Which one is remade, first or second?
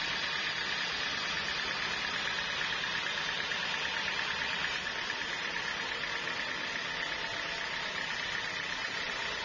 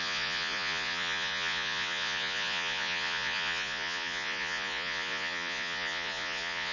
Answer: second